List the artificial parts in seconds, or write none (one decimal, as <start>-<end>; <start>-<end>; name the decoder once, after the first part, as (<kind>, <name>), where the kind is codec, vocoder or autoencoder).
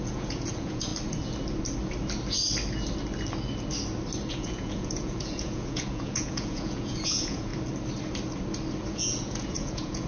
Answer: 0.0-0.9 (vocoder, Vocos); 4.3-7.5; 8.9-10.1